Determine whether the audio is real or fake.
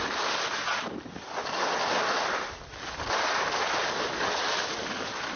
real